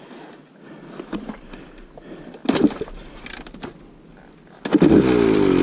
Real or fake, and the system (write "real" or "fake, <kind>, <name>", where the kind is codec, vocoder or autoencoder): real